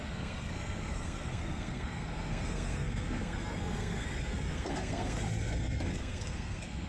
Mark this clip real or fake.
fake